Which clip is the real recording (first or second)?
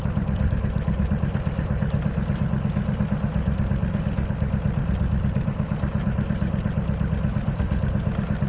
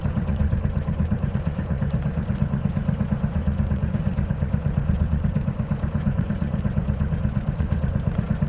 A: first